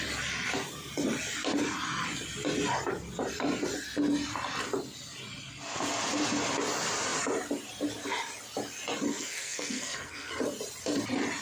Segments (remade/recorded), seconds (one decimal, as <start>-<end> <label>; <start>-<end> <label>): 0.0-9.1 recorded; 9.1-10.3 remade; 10.3-11.4 recorded